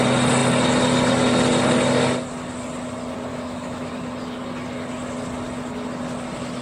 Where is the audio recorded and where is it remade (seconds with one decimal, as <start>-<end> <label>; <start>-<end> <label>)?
0.0-3.3 recorded; 3.3-3.9 remade; 3.9-6.6 recorded